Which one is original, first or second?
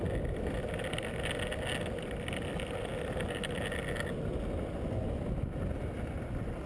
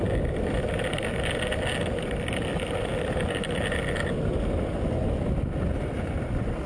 first